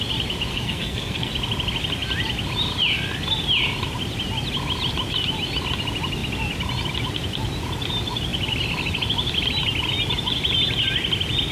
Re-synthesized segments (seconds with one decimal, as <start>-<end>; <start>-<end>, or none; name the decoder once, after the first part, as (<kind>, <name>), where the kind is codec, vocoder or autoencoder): 0.5-1.3 (codec, SNAC)